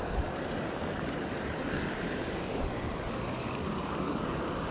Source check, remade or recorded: remade